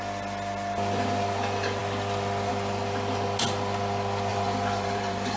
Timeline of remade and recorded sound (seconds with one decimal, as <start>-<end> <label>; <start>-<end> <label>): 0.0-4.3 recorded; 4.3-5.4 remade